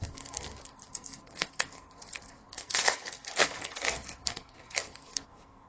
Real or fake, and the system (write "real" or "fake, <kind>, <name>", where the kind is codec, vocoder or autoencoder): fake, codec, SNAC